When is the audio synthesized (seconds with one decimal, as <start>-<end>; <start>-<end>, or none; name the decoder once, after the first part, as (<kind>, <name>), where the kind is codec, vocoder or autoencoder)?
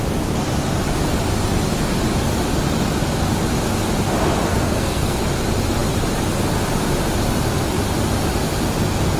4.5-5.2 (codec, SNAC)